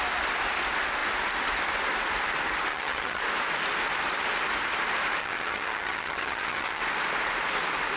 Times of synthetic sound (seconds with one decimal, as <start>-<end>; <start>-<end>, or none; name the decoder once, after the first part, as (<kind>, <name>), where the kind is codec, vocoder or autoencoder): 2.7-3.2 (vocoder, HiFi-GAN); 5.2-6.8